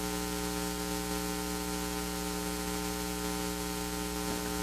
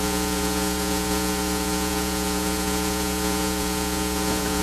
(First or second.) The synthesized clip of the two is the second